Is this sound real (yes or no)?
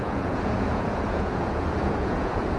no